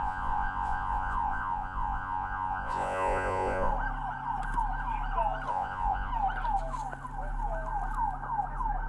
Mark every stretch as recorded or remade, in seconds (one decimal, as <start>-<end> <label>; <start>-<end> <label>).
0.0-3.7 remade; 3.7-5.5 recorded; 5.5-6.1 remade; 6.1-8.9 recorded

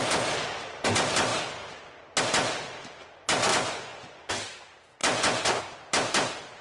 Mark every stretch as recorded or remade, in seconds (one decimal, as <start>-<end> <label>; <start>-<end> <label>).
0.0-3.5 recorded; 3.5-4.3 remade; 4.3-5.0 recorded; 5.0-5.6 remade; 5.6-6.6 recorded